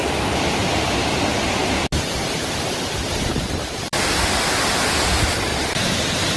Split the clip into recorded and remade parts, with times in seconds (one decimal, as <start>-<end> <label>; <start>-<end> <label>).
0.0-0.6 recorded; 0.6-4.4 remade; 4.4-5.5 recorded; 5.5-6.4 remade